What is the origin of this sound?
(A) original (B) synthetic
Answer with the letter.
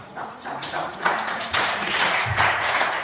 B